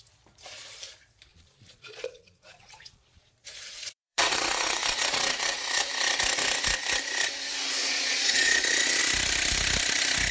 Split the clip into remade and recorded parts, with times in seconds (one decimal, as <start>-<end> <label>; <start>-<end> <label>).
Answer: 0.0-1.3 recorded; 1.3-5.9 remade; 5.9-7.8 recorded; 7.8-9.0 remade; 9.0-10.3 recorded